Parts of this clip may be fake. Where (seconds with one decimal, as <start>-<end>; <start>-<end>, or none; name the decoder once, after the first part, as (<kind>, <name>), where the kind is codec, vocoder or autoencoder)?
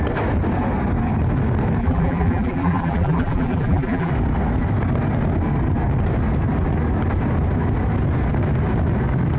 1.8-4.1 (vocoder, BigVGAN v2)